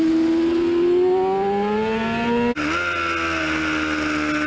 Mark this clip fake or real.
real